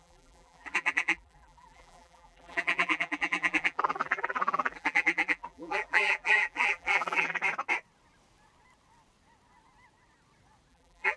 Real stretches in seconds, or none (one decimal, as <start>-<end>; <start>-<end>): 7.4-10.7